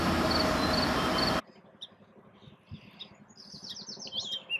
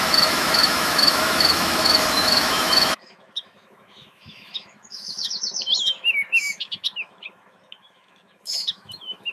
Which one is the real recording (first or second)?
first